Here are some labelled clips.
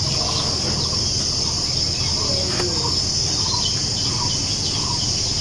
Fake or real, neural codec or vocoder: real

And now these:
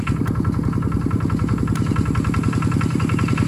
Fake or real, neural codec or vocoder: real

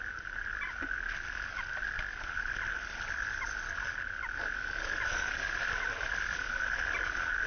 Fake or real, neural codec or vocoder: real